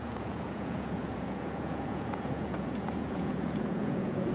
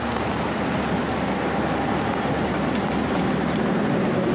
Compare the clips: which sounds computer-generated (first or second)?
first